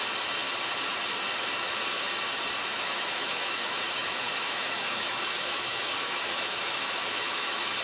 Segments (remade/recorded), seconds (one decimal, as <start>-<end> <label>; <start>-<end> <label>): 0.0-2.7 recorded; 2.7-7.8 remade